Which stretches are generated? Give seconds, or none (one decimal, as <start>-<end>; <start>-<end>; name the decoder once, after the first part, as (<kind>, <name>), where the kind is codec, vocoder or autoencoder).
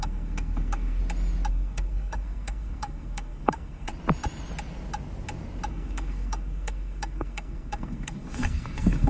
0.0-1.0 (codec, SNAC); 1.5-3.9; 5.7-9.1